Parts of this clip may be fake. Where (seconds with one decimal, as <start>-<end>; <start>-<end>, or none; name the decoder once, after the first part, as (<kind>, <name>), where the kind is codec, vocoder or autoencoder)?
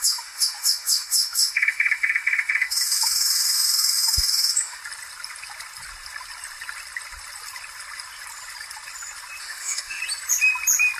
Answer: 0.0-4.8 (autoencoder, DAC-VAE); 9.4-10.0